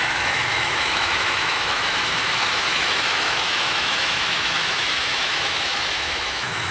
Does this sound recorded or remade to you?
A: remade